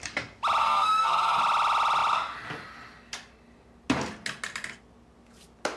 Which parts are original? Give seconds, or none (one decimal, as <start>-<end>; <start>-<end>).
0.0-0.6; 1.4-5.8